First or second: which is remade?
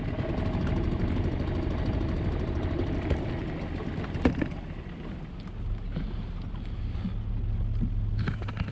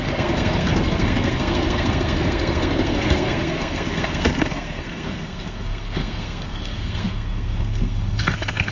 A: second